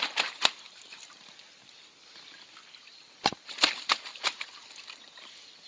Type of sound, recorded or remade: remade